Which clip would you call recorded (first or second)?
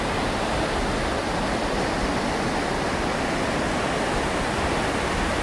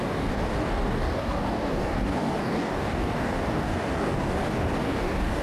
first